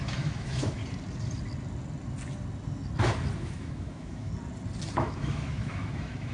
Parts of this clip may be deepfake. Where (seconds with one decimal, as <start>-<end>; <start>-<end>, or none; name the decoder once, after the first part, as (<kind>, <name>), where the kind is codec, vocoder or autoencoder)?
0.0-0.8 (autoencoder, DAC-VAE); 3.4-4.3; 5.0-6.3